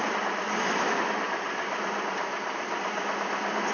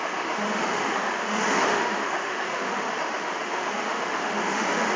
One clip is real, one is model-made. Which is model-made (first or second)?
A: second